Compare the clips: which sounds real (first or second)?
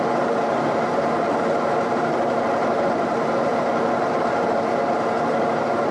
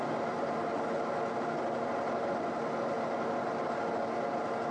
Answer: second